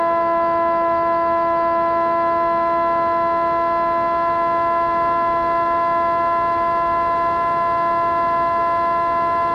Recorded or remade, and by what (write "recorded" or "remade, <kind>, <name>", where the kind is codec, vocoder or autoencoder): recorded